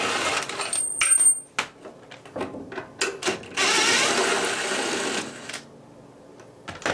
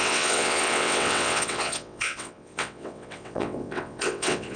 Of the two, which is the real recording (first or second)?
first